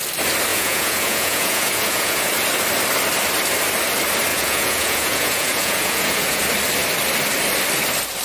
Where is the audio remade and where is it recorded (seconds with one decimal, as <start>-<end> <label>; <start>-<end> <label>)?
0.0-0.5 recorded; 0.5-2.3 remade; 2.3-4.3 recorded; 4.3-6.4 remade; 6.4-8.2 recorded